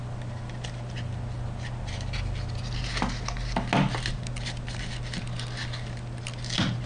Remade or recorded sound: recorded